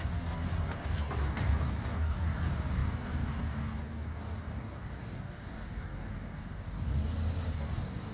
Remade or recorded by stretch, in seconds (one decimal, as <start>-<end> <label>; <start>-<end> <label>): 0.0-7.0 remade; 7.0-7.5 recorded; 7.5-8.1 remade